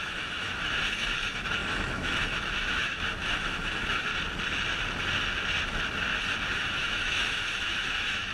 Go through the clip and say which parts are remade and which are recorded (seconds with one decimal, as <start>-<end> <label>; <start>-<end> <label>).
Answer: 0.0-4.1 remade; 4.1-6.5 recorded; 6.5-8.3 remade